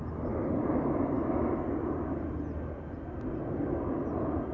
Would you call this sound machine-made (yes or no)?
no